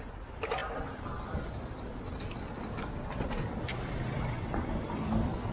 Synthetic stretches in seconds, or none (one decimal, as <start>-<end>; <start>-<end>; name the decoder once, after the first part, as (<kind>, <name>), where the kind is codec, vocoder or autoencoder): 0.0-5.5 (vocoder, BigVGAN v2)